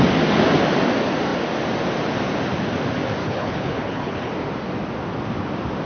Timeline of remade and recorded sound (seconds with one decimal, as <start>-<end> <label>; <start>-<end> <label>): 0.0-3.2 recorded; 3.2-4.3 remade; 4.3-5.9 recorded